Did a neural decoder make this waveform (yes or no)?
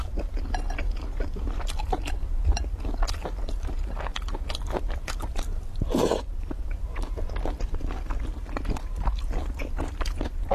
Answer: no